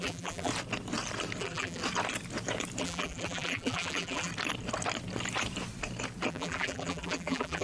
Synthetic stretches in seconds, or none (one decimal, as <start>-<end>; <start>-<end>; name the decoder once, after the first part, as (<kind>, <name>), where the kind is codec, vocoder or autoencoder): 0.0-0.5 (vocoder, BigVGAN v2); 1.4-1.8; 2.8-4.3; 6.3-7.6